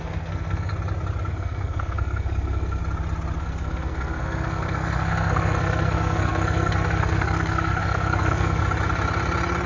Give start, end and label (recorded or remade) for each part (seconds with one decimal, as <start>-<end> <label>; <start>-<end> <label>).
0.0-0.7 remade; 0.7-1.3 recorded; 1.3-2.8 remade; 2.8-3.4 recorded; 3.4-8.6 remade; 8.6-9.7 recorded